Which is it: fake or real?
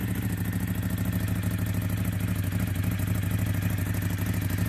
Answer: real